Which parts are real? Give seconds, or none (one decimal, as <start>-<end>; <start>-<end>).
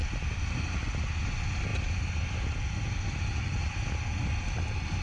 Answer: 0.5-1.7; 2.3-5.0